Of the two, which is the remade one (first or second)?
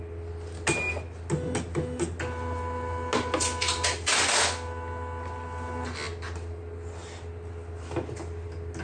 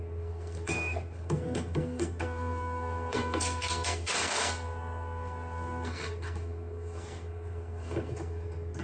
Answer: second